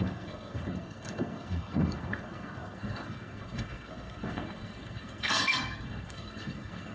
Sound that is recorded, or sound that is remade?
remade